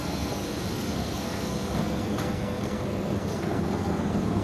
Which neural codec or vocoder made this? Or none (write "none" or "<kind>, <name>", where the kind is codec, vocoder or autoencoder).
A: codec, SNAC